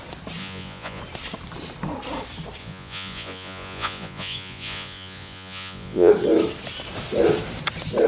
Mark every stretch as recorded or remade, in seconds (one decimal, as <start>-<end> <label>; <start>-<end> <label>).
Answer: 0.0-0.4 recorded; 0.4-1.0 remade; 1.0-2.6 recorded; 2.6-6.1 remade; 6.1-8.1 recorded